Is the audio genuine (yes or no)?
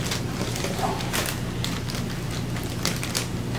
yes